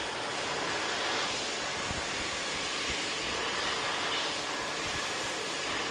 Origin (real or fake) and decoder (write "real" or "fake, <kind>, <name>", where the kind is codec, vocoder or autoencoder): real